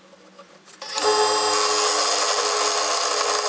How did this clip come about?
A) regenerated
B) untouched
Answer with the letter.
B